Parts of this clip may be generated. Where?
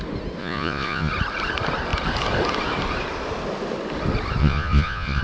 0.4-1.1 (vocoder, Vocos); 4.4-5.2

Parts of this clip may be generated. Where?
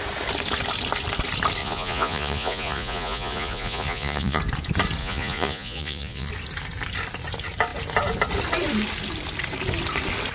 1.6-4.4 (vocoder, Vocos); 5.0-6.3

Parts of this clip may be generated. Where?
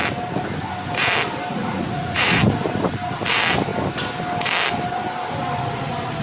1.5-2.4 (vocoder, Vocos)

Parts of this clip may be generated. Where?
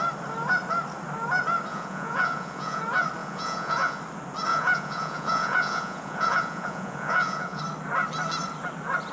1.7-2.8 (vocoder, Vocos); 3.2-4.0; 4.5-7.6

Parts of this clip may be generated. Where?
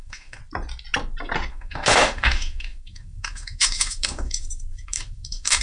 0.0-0.4 (autoencoder, DAC-VAE); 1.5-5.6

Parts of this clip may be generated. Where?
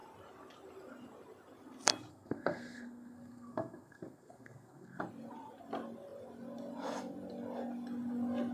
2.1-5.0 (codec, SNAC)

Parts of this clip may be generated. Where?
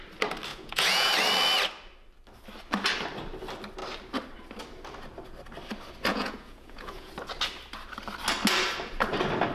0.5-1.1 (vocoder, Vocos); 6.1-7.1